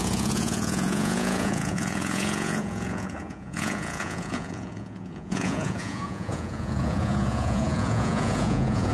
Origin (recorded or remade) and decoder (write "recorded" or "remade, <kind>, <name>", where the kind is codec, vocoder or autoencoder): remade, vocoder, Vocos